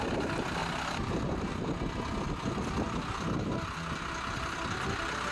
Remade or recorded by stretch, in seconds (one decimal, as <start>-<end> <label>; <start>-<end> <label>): 0.0-0.6 recorded; 0.6-1.5 remade; 1.5-5.3 recorded

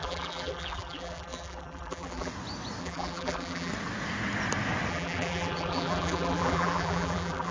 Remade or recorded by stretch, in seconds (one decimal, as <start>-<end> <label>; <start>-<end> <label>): 0.0-2.3 remade; 2.3-2.8 recorded; 2.8-3.7 remade; 3.7-4.9 recorded; 4.9-7.5 remade

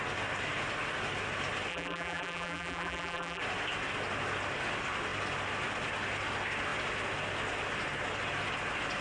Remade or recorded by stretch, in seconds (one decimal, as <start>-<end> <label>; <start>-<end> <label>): 0.0-1.7 recorded; 1.7-3.4 remade; 3.4-9.0 recorded

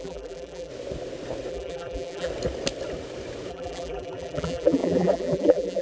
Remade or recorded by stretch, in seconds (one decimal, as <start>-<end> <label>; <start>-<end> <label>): 0.0-0.7 remade; 0.7-1.5 recorded; 1.5-2.3 remade; 2.3-3.5 recorded; 3.5-5.8 remade